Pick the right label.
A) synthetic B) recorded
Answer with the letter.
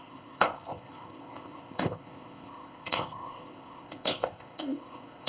A